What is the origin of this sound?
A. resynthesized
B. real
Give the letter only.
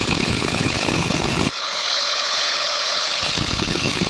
A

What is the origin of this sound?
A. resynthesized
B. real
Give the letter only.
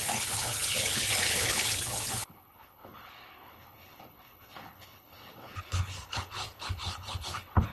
A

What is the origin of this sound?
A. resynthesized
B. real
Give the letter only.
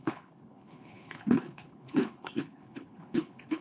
A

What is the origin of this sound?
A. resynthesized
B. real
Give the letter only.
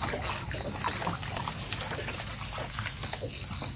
B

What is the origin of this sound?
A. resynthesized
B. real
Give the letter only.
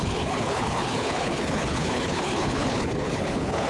A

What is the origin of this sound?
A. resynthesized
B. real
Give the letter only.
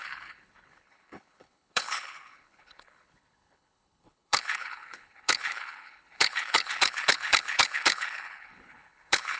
A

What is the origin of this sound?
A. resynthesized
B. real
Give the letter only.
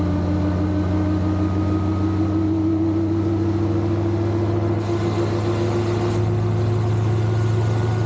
B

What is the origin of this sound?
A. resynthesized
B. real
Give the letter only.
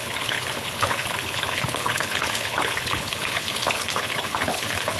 A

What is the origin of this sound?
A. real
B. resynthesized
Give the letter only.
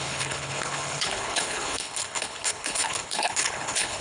B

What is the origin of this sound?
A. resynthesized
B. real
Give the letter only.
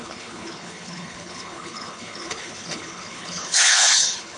A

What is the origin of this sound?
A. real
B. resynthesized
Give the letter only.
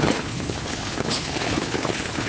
B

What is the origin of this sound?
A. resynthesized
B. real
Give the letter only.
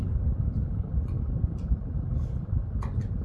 B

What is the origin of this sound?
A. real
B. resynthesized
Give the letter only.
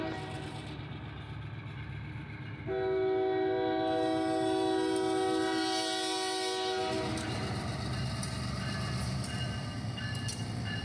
A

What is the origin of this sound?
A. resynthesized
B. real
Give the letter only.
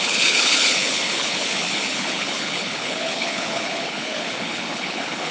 A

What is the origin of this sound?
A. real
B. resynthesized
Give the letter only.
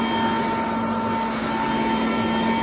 A